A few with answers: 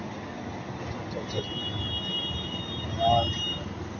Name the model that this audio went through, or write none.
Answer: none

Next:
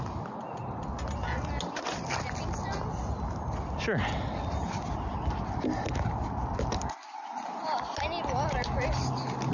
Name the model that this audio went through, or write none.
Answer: none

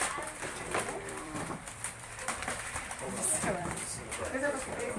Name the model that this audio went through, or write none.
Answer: vocoder, BigVGAN v2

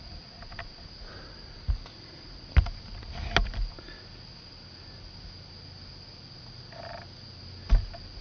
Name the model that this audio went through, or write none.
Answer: none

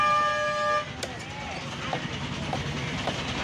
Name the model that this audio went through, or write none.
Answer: none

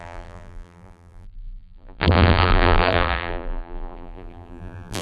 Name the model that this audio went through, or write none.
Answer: vocoder, BigVGAN v2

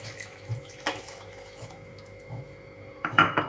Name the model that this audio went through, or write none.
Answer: autoencoder, DAC-VAE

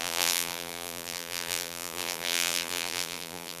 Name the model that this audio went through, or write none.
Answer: vocoder, BigVGAN v2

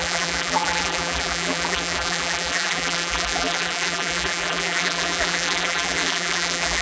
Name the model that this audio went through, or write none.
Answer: vocoder, BigVGAN v2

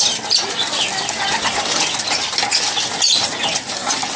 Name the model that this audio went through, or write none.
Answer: none